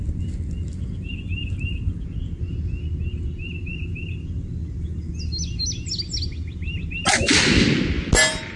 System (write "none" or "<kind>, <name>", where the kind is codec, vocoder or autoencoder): none